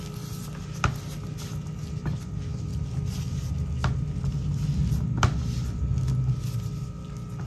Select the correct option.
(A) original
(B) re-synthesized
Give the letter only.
A